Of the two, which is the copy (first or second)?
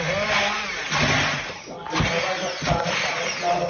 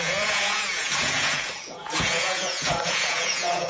second